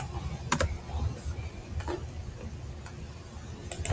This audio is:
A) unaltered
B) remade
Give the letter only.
A